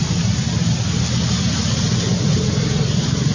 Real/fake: real